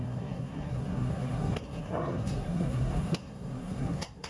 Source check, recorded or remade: remade